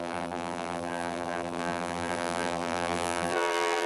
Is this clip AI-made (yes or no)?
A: yes